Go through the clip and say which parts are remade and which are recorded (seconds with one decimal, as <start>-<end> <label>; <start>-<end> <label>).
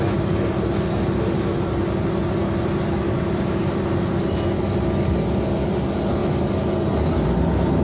0.0-7.8 recorded